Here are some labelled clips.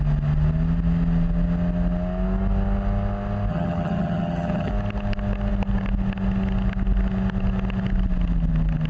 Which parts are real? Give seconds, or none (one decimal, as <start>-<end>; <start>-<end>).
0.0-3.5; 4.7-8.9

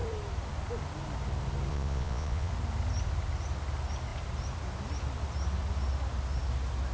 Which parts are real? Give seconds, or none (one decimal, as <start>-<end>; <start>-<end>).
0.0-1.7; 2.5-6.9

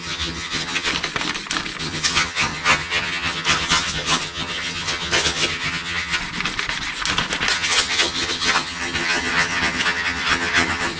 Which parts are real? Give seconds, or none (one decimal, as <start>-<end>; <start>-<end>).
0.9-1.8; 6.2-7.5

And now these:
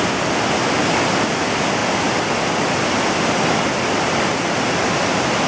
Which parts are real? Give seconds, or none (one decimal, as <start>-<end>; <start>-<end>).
0.0-5.5

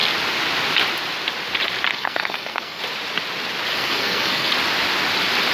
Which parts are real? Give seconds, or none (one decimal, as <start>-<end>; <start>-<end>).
0.0-1.9; 2.8-3.7; 4.5-5.5

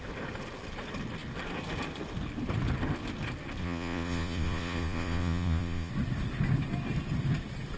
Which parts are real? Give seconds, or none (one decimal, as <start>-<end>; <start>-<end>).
0.0-3.6; 5.9-7.8

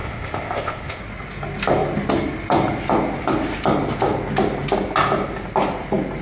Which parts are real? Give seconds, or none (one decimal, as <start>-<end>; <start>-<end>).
1.0-6.2